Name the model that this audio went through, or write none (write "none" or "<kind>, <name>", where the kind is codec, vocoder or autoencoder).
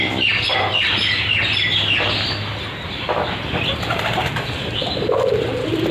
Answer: vocoder, BigVGAN v2